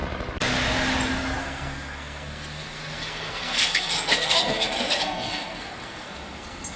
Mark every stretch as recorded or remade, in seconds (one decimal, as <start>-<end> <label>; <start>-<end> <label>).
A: 0.0-1.4 recorded; 1.4-6.8 remade